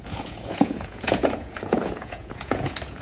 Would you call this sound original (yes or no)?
no